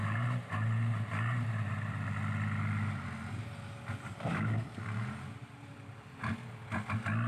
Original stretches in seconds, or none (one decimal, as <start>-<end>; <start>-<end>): 2.1-5.4; 6.0-7.3

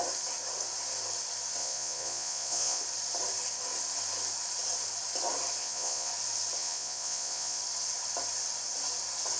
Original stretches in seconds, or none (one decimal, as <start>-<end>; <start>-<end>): 0.0-1.6; 2.8-5.6; 6.1-6.6; 7.6-9.4

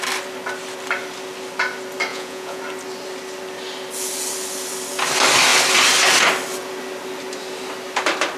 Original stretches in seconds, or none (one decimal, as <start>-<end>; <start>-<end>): 0.0-2.1; 2.6-8.4

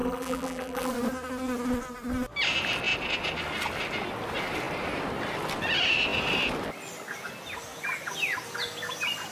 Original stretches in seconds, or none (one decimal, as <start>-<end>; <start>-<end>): 0.9-9.3

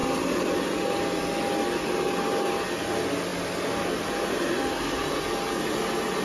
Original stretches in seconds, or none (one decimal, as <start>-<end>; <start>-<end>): 0.0-6.2

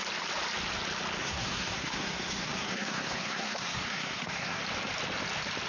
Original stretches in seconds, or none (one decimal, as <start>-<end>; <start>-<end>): 0.0-1.2; 4.6-5.7

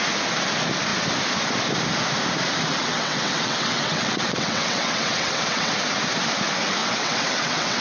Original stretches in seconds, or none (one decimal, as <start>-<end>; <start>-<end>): 0.0-2.8; 5.7-6.8

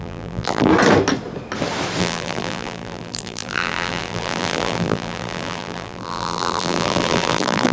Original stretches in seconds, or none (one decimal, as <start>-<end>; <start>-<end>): 0.7-2.0